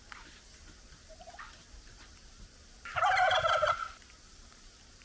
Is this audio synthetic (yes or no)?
no